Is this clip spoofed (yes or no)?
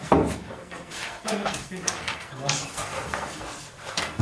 yes